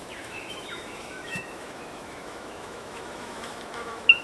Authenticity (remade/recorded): remade